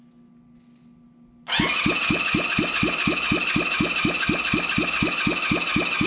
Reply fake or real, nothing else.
real